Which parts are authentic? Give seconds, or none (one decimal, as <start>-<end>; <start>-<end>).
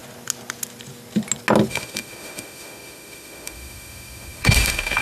0.0-1.7